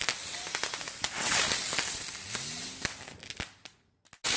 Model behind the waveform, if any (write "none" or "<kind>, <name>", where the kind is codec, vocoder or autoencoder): none